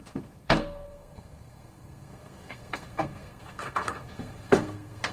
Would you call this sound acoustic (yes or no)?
no